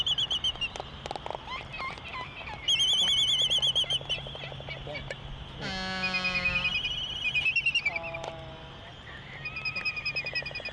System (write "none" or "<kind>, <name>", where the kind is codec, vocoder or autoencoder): none